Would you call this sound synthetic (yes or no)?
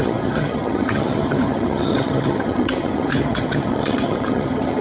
yes